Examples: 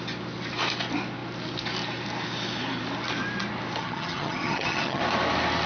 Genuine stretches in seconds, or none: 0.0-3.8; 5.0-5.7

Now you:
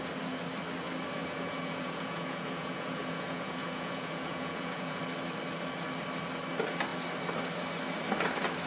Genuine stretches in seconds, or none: 0.0-1.2; 5.0-8.7

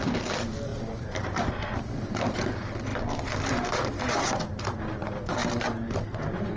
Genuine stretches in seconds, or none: 2.9-4.0; 5.4-5.9